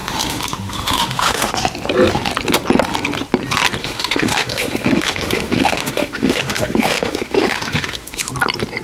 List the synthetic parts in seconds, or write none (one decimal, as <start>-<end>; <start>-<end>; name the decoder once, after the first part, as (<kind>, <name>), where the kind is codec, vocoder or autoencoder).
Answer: 0.0-1.5 (autoencoder, DAC-VAE); 3.8-8.3